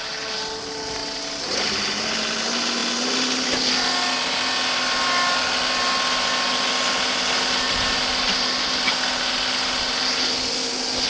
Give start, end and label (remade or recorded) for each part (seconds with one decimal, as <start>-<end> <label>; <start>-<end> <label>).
0.0-11.1 recorded